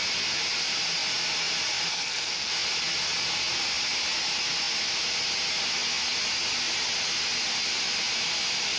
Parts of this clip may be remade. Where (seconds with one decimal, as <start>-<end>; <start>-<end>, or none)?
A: 1.9-2.5